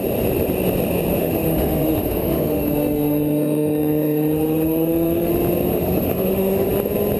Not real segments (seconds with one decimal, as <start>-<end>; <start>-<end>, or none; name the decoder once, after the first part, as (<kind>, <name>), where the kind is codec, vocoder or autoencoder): 1.1-5.3 (autoencoder, DAC-VAE); 5.7-6.7